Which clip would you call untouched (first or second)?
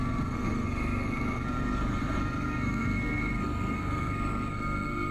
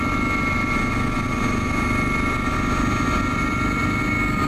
second